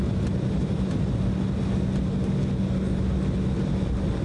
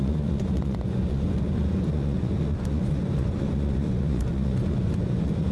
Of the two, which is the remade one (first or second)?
second